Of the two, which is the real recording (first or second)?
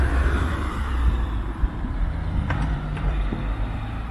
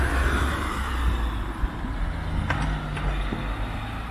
second